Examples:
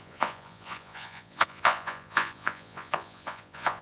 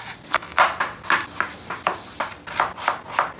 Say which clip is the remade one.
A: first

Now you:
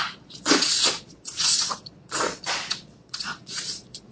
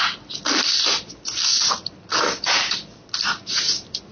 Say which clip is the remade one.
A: first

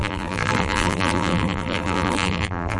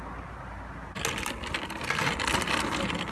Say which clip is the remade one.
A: first